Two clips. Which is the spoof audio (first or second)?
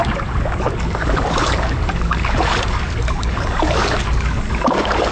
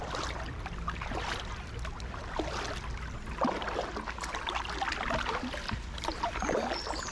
first